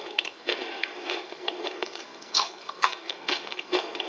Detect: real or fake fake